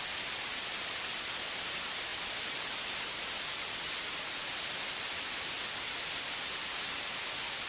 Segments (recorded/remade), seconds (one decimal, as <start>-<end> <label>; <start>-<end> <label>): 0.0-7.7 recorded

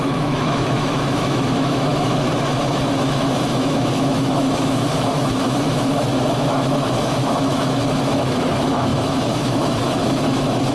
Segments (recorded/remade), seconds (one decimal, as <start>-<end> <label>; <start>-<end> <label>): 0.0-10.7 remade

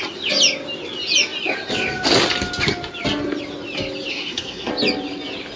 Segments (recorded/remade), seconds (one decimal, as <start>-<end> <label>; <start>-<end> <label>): 0.0-4.1 recorded; 4.1-4.7 remade; 4.7-5.6 recorded

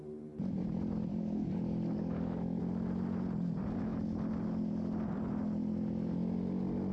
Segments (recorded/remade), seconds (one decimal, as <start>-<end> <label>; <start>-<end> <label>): 0.0-1.1 recorded; 1.1-2.6 remade; 2.6-6.9 recorded

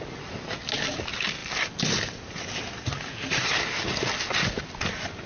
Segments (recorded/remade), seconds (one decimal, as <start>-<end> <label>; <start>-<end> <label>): 0.0-5.3 recorded

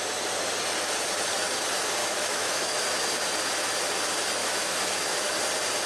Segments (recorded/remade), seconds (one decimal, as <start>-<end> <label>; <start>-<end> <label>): 0.0-2.0 recorded; 2.0-2.8 remade; 2.8-4.4 recorded; 4.4-5.4 remade; 5.4-5.9 recorded

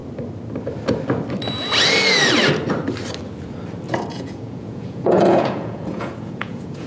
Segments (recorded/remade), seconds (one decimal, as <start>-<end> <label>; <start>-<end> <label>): 0.0-4.1 recorded; 4.1-6.9 remade